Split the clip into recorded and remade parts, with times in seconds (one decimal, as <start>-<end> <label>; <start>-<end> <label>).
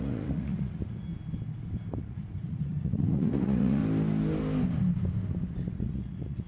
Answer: 0.0-1.1 remade; 1.1-2.0 recorded; 2.0-3.8 remade; 3.8-5.6 recorded; 5.6-6.5 remade